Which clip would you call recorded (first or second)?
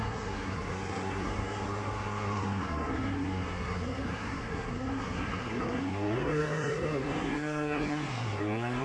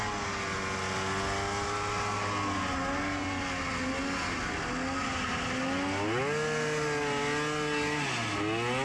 second